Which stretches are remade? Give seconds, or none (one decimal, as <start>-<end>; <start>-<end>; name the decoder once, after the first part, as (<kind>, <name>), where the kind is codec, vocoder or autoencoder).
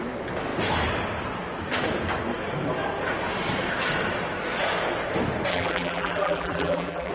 5.5-7.1 (vocoder, BigVGAN v2)